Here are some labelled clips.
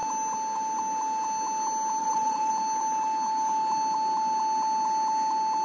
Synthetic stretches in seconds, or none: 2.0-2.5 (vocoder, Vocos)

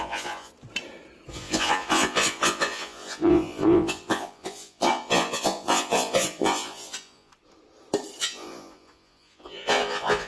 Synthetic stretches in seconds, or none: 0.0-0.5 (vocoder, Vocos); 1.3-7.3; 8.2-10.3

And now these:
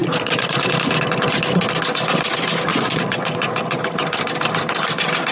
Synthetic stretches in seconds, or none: 0.0-0.7 (vocoder, Vocos); 2.7-3.8

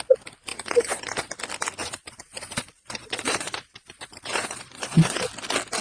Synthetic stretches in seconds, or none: 0.5-1.3 (vocoder, Vocos); 1.8-5.3

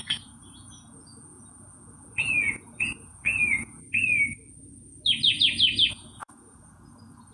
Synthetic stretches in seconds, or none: 0.0-3.8 (vocoder, Vocos); 5.9-7.3

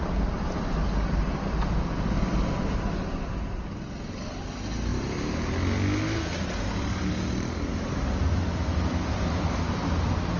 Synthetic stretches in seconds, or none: none